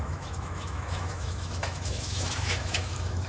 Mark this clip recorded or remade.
remade